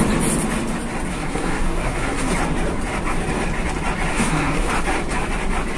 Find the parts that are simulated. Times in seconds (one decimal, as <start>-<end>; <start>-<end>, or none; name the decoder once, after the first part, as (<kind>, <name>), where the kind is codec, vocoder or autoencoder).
1.1-2.3 (codec, SNAC); 4.1-4.7

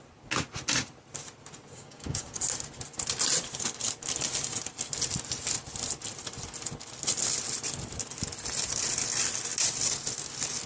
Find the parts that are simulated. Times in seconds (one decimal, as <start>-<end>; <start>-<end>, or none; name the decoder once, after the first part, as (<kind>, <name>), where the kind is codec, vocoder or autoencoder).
1.7-2.4 (codec, DAC)